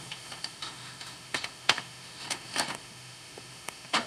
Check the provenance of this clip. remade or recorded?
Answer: remade